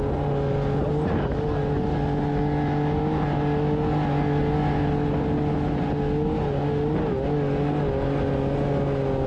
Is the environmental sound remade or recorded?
recorded